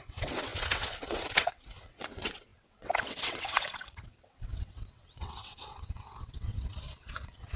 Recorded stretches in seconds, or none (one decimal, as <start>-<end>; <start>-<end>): none